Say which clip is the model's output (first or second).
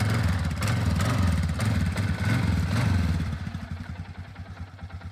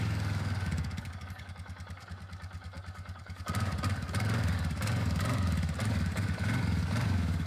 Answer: second